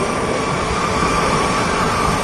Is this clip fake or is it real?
fake